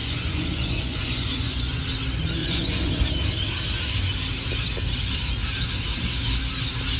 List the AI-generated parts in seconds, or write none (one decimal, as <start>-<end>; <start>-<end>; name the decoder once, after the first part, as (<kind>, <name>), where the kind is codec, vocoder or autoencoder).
0.0-1.8 (vocoder, Vocos); 2.4-3.0